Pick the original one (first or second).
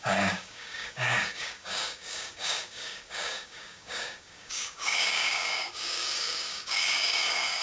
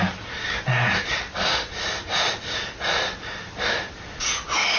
second